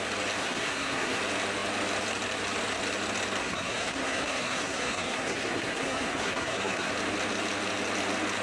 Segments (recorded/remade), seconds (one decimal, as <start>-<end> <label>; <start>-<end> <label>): 0.0-0.4 recorded; 0.4-1.2 remade; 1.2-3.4 recorded; 3.4-6.9 remade; 6.9-8.4 recorded